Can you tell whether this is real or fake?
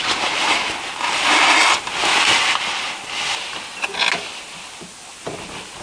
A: real